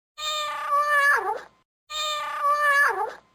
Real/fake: real